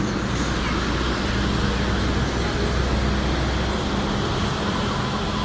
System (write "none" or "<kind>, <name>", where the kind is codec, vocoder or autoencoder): none